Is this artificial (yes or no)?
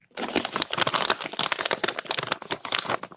no